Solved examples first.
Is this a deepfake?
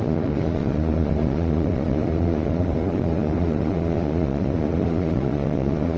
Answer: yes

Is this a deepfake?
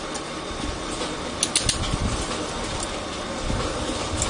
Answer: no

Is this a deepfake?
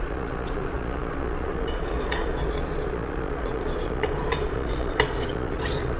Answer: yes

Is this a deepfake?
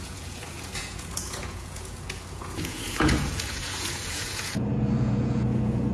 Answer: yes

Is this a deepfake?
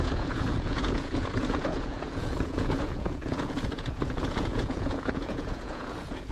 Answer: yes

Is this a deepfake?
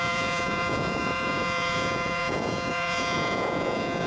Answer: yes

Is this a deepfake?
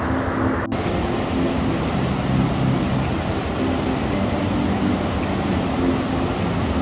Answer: no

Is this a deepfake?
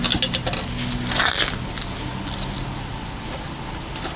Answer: no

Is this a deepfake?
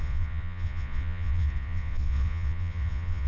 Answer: yes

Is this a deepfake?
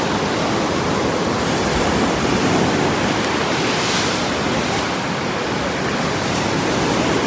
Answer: no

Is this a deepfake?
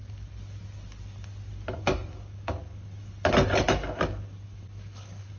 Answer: no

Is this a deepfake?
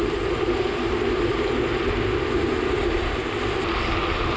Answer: no